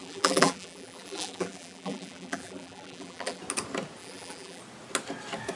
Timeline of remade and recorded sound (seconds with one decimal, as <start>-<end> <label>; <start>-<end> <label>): 0.0-3.4 remade; 3.4-4.0 recorded; 4.0-4.6 remade; 4.6-5.6 recorded